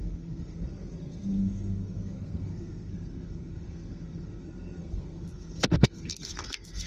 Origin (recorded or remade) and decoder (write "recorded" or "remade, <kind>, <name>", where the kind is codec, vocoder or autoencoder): remade, codec, SNAC